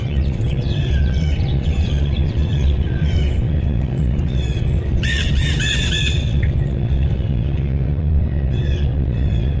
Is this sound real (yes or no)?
no